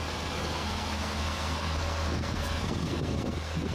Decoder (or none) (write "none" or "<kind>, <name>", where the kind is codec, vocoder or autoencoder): codec, SNAC